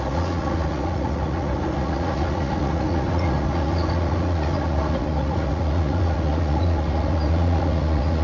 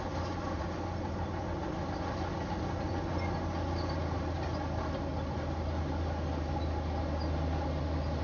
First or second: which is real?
second